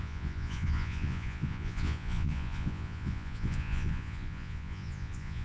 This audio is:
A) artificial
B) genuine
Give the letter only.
A